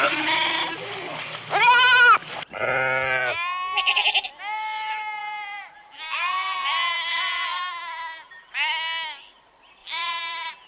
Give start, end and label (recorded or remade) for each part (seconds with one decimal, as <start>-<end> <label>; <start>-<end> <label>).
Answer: 0.0-5.2 recorded; 5.2-8.5 remade; 8.5-9.8 recorded; 9.8-10.7 remade